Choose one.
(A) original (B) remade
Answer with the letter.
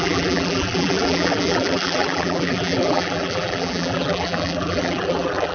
B